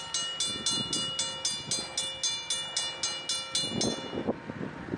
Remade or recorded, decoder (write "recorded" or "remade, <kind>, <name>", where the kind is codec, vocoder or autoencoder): recorded